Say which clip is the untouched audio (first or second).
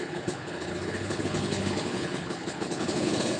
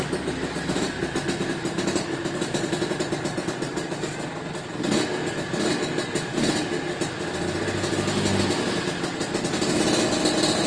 second